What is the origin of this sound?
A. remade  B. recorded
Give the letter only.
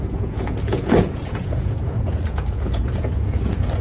A